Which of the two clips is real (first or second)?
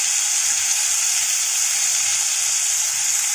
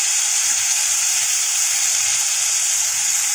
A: first